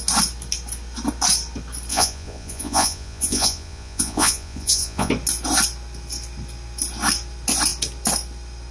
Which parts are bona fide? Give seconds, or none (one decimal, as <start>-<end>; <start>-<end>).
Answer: 0.0-1.9; 5.1-8.7